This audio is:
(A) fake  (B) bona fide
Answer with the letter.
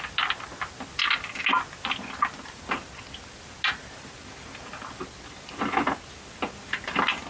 B